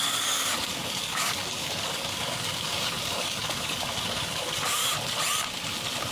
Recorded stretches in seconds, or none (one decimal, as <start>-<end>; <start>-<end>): 4.8-6.1